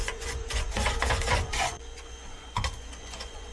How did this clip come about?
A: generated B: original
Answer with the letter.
A